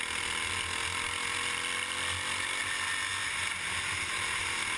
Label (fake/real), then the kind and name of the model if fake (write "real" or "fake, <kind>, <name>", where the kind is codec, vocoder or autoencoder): real